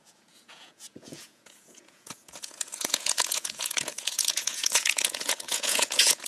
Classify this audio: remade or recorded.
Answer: remade